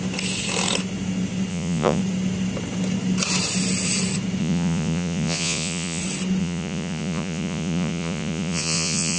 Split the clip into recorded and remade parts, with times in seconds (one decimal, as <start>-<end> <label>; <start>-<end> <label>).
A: 0.0-1.5 recorded; 1.5-2.0 remade; 2.0-4.4 recorded; 4.4-6.0 remade; 6.0-6.4 recorded; 6.4-9.2 remade